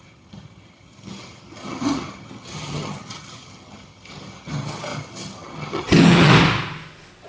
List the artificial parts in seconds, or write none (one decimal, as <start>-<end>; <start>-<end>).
0.0-6.3